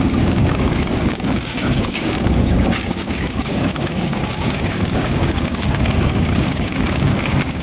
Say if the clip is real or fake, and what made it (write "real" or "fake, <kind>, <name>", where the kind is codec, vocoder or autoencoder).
fake, codec, DAC